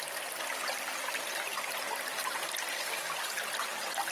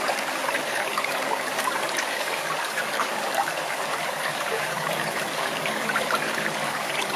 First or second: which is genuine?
first